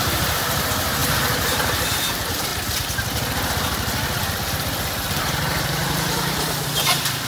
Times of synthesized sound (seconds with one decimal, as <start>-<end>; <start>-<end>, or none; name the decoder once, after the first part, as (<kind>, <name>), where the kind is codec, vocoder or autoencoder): 0.0-2.5 (vocoder, BigVGAN v2); 5.2-7.3